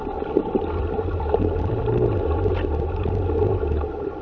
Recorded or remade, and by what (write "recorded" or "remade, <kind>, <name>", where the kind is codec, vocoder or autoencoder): recorded